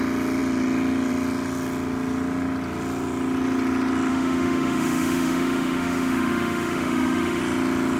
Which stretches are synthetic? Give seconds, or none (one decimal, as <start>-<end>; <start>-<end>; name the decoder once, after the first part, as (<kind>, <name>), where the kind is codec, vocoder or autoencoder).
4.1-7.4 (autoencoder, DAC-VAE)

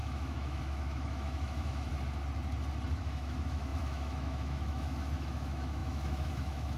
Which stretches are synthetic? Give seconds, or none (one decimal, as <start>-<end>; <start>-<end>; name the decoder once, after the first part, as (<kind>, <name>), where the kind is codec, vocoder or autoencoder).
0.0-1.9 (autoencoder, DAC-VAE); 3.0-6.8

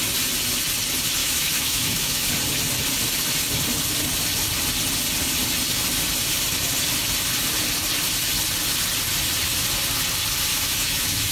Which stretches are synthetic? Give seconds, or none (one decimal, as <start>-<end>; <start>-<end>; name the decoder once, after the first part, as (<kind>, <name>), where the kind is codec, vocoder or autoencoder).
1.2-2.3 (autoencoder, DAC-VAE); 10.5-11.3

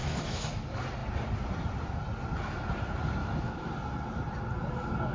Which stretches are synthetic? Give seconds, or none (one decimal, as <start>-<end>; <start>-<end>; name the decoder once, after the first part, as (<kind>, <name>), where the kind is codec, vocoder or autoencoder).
0.0-0.6 (autoencoder, DAC-VAE); 3.2-3.7

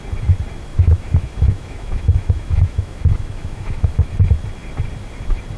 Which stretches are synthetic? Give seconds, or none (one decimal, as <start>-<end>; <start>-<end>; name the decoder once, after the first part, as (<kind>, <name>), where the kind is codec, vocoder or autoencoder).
0.7-4.1 (autoencoder, DAC-VAE)

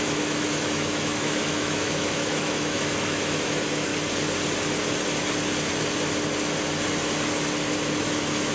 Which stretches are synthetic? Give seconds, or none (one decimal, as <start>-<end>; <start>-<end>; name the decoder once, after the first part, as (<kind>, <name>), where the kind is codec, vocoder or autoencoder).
0.0-3.9 (autoencoder, DAC-VAE); 8.0-8.5